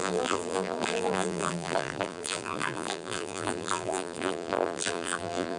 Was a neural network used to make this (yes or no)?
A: yes